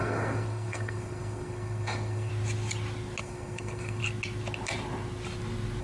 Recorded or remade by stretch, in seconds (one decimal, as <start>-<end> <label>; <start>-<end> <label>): 0.0-2.3 remade; 2.3-3.2 recorded; 3.2-4.0 remade; 4.0-5.8 recorded